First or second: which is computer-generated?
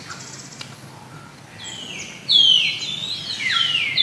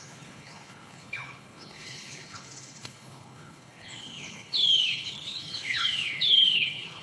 second